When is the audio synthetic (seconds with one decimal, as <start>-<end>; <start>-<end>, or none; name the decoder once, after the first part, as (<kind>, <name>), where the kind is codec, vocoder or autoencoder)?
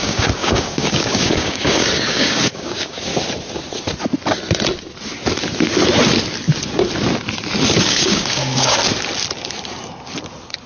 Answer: 0.0-3.1 (codec, DAC); 7.8-8.8